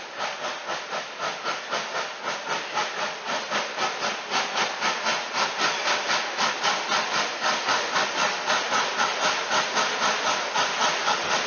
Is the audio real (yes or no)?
yes